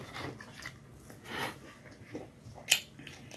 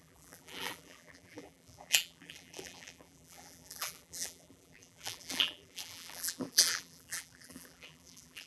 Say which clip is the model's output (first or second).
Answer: second